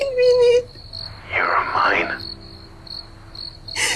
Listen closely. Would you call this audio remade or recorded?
recorded